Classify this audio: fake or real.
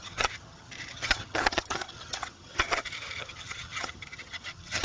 fake